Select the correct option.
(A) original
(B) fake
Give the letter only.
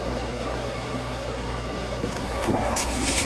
B